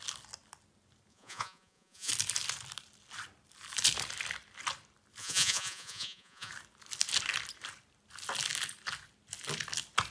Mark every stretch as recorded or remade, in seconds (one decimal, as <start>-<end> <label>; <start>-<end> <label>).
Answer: 0.0-1.1 recorded; 1.1-2.1 remade; 2.1-5.2 recorded; 5.2-6.5 remade; 6.5-10.1 recorded